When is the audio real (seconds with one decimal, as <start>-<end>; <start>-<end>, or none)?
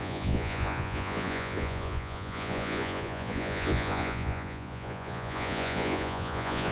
none